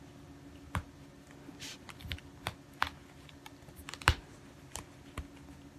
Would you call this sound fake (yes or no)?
no